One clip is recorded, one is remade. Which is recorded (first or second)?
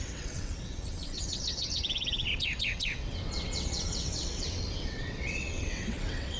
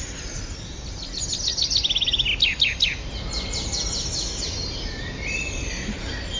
second